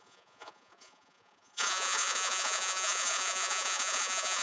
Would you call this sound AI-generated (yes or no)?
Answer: yes